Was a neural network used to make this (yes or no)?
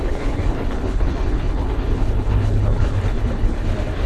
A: yes